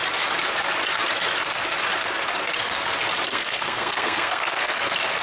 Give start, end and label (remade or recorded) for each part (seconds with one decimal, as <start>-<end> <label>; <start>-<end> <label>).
0.0-3.3 recorded; 3.3-4.8 remade; 4.8-5.2 recorded

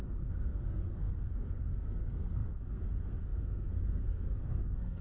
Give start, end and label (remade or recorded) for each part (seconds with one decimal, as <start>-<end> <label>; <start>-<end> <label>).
0.0-5.0 remade

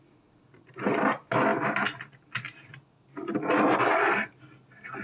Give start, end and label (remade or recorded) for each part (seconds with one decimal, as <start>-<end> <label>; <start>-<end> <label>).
0.0-5.0 recorded

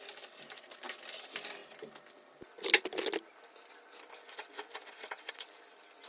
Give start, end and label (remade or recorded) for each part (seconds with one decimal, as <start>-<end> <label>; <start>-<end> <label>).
0.0-6.1 recorded

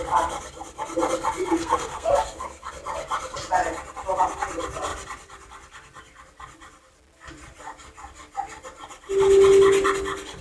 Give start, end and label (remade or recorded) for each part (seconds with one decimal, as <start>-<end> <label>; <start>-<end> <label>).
0.0-1.4 recorded; 1.4-2.7 remade; 2.7-10.4 recorded

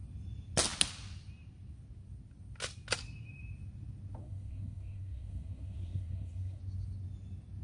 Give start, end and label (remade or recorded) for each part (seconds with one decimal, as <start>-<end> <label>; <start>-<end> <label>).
0.0-4.2 recorded; 4.2-6.6 remade; 6.6-7.6 recorded